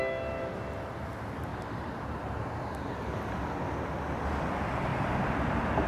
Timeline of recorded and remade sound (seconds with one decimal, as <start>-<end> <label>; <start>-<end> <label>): 0.0-1.5 recorded; 1.5-2.8 remade; 2.8-4.9 recorded; 4.9-5.9 remade